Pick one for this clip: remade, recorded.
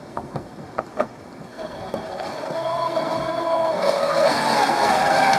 remade